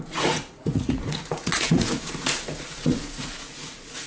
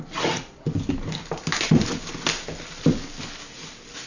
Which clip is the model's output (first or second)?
first